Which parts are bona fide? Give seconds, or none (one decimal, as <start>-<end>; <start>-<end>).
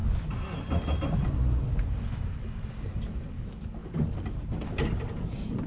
0.0-5.7